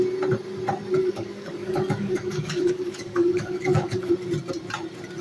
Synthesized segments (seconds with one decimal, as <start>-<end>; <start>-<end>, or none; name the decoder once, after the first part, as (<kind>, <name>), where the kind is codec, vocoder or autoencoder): 1.0-4.1 (codec, DAC)